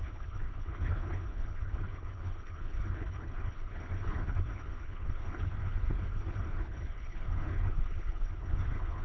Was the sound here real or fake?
fake